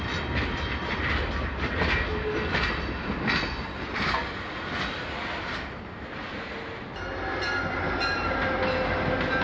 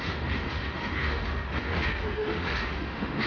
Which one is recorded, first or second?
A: first